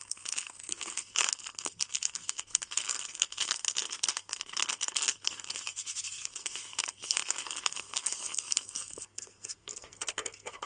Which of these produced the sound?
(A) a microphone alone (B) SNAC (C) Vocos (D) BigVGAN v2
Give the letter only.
B